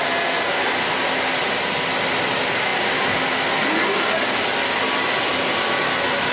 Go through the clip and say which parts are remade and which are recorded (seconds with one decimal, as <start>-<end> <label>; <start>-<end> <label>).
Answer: 0.0-6.3 recorded